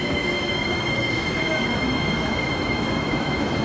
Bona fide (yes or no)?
no